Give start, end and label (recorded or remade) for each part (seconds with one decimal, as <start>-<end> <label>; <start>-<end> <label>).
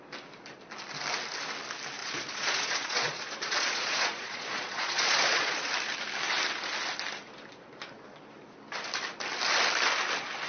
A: 0.0-2.0 recorded; 2.0-5.7 remade; 5.7-10.5 recorded